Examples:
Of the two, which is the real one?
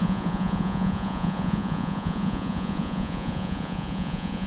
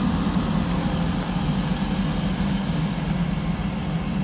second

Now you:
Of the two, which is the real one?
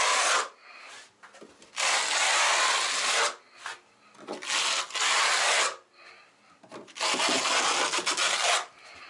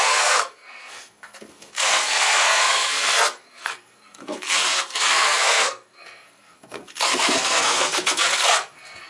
first